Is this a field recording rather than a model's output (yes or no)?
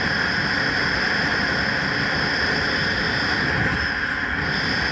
yes